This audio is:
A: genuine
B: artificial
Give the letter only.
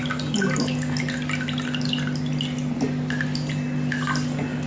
A